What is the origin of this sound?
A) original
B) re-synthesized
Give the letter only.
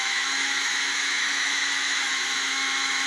B